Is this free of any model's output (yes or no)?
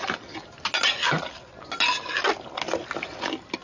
yes